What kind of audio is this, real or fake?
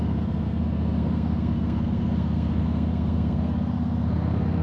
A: fake